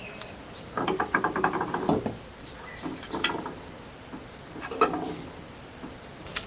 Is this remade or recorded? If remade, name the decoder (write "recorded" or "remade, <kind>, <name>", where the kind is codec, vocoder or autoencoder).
recorded